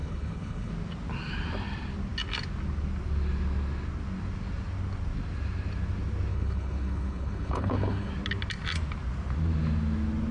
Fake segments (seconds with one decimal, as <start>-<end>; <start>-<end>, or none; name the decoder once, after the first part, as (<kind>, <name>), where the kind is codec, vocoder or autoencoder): 0.0-0.7 (codec, HILCodec); 6.3-8.1